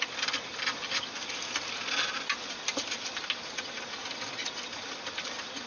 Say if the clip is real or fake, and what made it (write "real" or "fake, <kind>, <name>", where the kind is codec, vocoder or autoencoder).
real